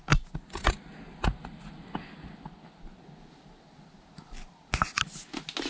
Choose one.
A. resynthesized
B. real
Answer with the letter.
B